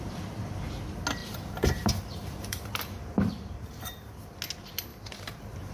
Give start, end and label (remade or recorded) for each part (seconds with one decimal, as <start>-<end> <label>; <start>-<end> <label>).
0.0-1.2 recorded; 1.2-4.4 remade; 4.4-4.9 recorded; 4.9-5.7 remade